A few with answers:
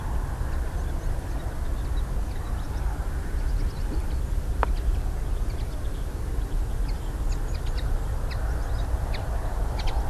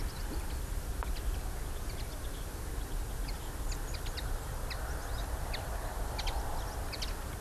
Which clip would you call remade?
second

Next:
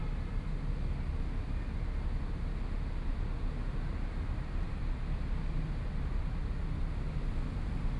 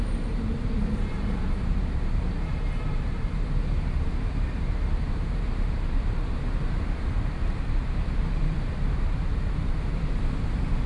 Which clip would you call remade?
second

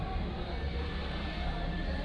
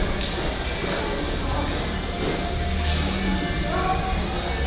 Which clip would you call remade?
first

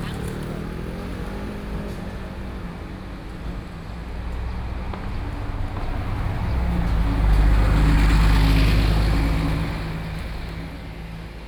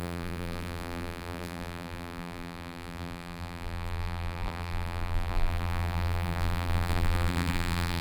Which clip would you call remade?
second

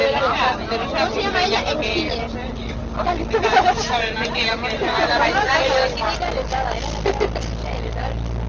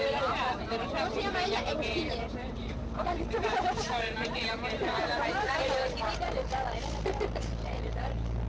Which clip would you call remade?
second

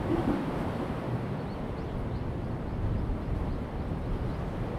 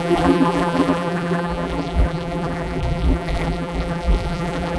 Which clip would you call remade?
second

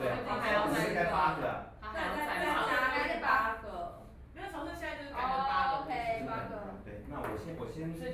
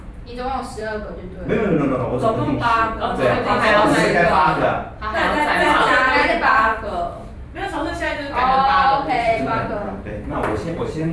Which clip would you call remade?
second